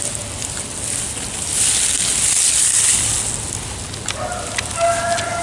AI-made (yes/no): no